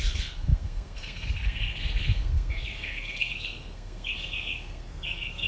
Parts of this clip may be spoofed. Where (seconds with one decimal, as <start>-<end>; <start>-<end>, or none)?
0.0-5.5